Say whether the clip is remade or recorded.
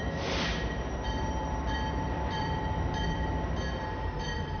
remade